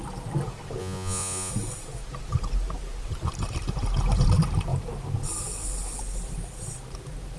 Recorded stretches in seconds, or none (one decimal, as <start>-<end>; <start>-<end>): 0.0-0.8; 1.5-7.4